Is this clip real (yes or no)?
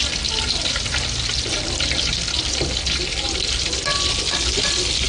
yes